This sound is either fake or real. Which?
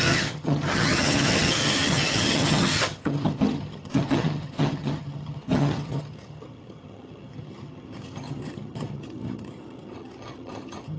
fake